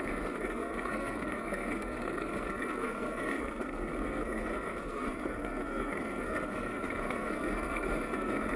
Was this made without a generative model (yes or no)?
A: no